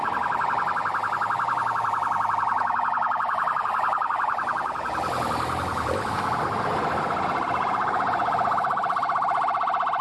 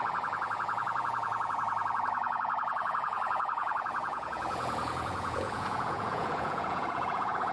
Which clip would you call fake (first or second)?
second